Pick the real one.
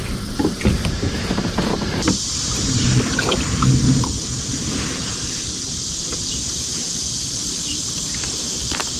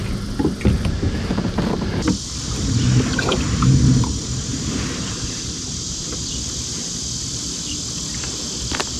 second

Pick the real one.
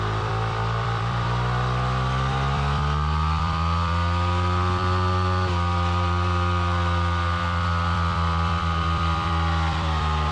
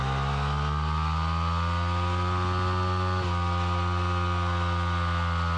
second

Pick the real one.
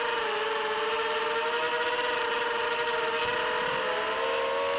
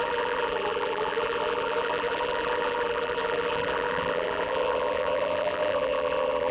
first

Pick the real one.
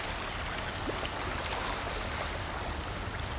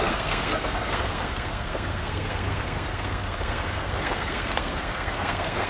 first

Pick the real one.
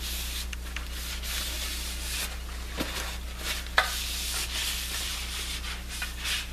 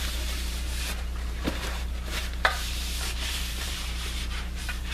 first